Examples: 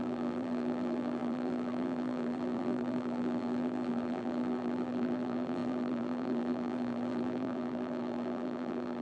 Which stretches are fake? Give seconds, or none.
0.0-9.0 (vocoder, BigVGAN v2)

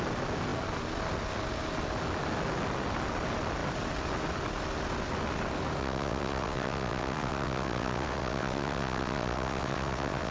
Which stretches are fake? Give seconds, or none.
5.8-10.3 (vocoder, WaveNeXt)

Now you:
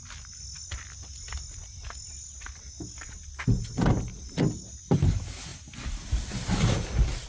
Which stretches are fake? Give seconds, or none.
none